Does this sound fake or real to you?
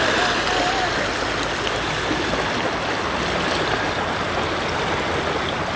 real